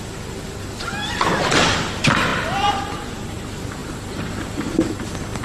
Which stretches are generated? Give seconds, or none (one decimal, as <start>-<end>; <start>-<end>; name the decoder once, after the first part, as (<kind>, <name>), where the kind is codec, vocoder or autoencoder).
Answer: 0.0-5.4 (vocoder, BigVGAN v2)